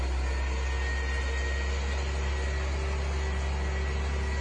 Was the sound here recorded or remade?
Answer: recorded